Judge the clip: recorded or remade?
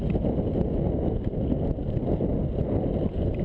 recorded